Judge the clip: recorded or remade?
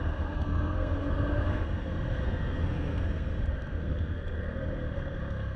remade